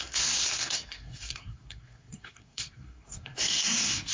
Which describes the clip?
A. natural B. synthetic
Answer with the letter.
B